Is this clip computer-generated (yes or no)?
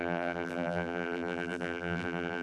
yes